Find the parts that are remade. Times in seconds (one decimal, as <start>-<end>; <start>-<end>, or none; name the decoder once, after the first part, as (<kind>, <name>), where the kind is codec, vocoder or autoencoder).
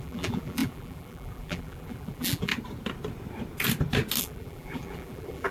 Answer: 0.0-2.5 (vocoder, BigVGAN v2); 4.2-5.5